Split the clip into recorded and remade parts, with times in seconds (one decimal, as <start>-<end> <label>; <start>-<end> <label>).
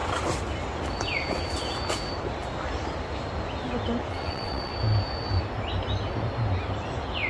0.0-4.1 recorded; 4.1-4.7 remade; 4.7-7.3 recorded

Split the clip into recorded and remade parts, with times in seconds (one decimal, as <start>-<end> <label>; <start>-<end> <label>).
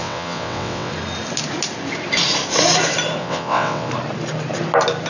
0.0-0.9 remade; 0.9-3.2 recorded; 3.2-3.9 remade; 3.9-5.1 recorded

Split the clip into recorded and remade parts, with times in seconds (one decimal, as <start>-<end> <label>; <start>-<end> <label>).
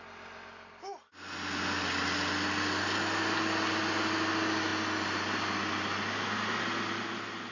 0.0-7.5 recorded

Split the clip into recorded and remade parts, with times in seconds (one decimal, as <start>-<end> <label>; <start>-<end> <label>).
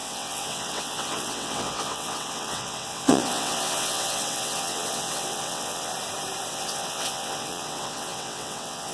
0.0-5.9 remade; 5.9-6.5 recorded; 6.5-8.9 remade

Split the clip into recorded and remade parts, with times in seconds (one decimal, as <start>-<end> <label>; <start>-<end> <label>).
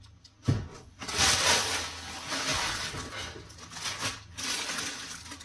0.0-0.7 recorded; 0.7-1.6 remade; 1.6-5.4 recorded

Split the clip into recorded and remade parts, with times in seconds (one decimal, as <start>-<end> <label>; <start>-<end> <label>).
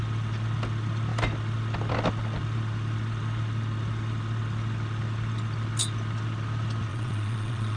0.0-6.9 recorded; 6.9-7.8 remade